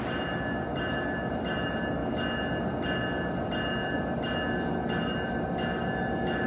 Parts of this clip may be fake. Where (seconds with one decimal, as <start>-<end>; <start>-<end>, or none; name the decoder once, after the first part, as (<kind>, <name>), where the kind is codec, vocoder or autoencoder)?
none